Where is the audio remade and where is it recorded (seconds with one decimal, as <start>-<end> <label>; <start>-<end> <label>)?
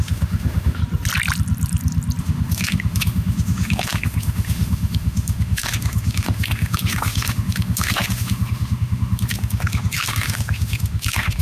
0.0-0.8 remade; 0.8-2.2 recorded; 2.2-11.4 remade